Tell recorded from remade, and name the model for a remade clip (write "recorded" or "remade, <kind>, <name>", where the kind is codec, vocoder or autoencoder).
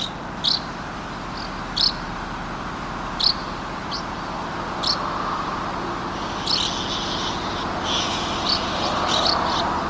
recorded